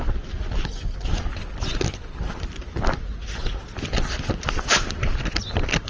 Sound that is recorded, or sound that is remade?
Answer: recorded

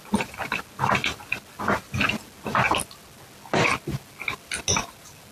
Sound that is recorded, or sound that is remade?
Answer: recorded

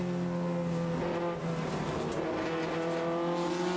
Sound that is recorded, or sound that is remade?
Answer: recorded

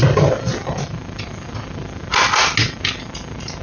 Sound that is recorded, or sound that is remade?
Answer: recorded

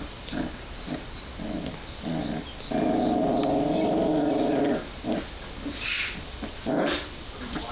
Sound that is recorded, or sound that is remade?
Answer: recorded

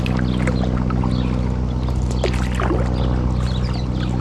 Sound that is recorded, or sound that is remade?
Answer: recorded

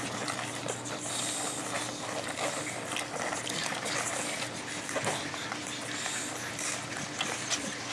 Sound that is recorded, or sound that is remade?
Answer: recorded